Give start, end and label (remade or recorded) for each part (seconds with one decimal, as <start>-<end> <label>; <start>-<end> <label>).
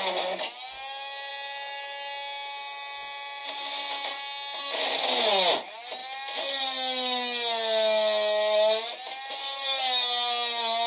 0.0-10.9 recorded